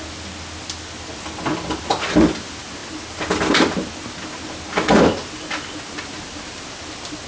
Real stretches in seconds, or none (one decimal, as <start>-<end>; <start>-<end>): 0.0-7.3